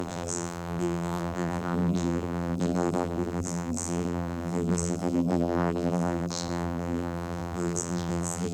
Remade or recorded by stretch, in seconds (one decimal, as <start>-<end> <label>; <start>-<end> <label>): 0.0-8.5 remade

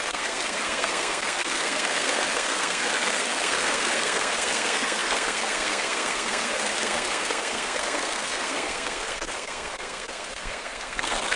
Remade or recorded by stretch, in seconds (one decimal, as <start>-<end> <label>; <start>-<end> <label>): 0.0-11.4 remade

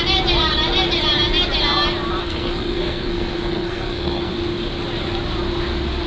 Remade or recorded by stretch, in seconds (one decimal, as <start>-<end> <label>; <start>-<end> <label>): 0.0-2.2 recorded; 2.2-4.3 remade; 4.3-6.1 recorded

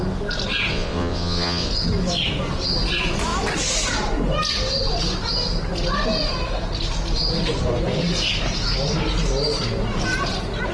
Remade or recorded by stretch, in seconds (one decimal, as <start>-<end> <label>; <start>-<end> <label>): 0.0-0.7 recorded; 0.7-1.7 remade; 1.7-10.7 recorded

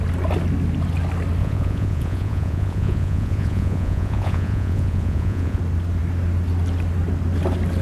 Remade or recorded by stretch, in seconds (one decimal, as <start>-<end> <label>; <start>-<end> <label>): 0.0-1.4 recorded; 1.4-5.6 remade; 5.6-7.8 recorded

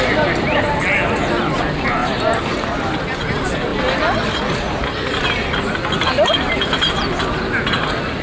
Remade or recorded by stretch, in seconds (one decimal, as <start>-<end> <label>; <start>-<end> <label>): 0.0-8.2 recorded

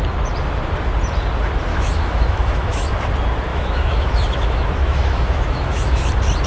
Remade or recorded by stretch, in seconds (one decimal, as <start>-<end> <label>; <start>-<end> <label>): 0.0-1.7 recorded; 1.7-2.9 remade; 2.9-3.5 recorded; 3.5-6.1 remade; 6.1-6.5 recorded

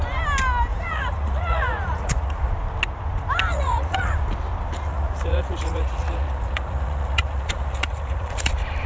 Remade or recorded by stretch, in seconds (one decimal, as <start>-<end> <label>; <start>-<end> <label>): 0.0-0.7 recorded; 0.7-2.5 remade; 2.5-3.5 recorded; 3.5-4.1 remade; 4.1-4.9 recorded; 4.9-8.5 remade; 8.5-8.9 recorded